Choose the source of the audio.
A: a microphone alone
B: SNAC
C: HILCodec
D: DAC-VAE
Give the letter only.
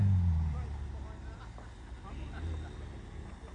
A